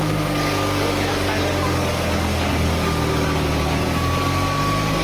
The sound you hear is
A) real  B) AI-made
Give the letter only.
B